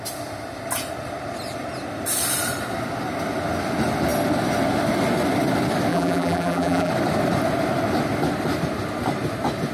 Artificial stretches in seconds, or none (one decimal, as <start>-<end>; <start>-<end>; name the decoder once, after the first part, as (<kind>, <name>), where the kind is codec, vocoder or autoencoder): 5.9-6.9 (vocoder, BigVGAN v2)